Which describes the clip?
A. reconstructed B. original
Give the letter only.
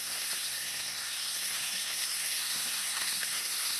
A